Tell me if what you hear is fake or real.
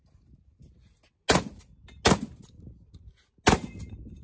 real